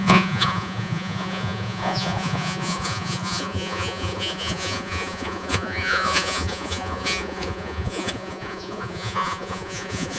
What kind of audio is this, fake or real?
fake